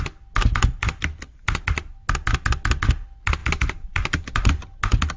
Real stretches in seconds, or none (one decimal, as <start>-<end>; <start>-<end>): 0.0-3.4; 4.5-5.2